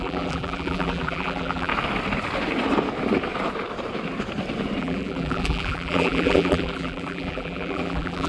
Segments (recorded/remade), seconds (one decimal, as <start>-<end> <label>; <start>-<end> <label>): 0.0-1.7 remade; 1.7-4.8 recorded; 4.8-8.3 remade